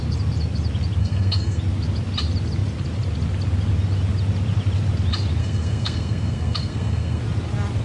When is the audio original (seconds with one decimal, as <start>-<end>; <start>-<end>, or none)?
0.0-1.0; 1.6-5.4; 7.2-7.8